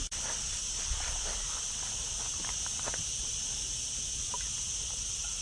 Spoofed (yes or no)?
no